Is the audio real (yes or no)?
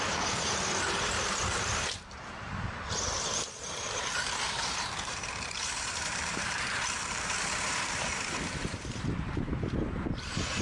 no